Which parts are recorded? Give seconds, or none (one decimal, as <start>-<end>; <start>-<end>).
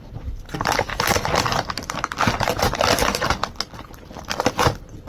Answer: 0.0-5.1